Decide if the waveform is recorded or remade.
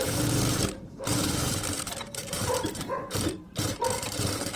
remade